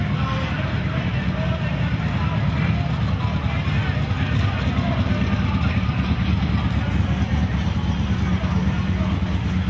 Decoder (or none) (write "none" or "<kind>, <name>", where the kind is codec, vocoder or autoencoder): none